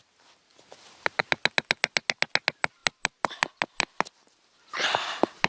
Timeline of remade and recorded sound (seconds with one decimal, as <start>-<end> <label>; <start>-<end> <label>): 0.0-5.5 recorded